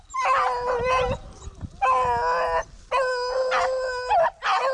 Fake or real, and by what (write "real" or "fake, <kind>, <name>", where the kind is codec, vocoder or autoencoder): real